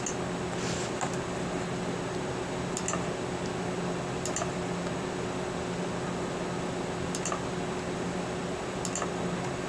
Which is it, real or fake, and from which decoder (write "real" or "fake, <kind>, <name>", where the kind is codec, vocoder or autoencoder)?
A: real